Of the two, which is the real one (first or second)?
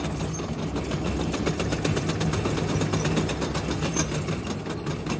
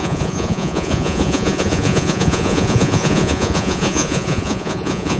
first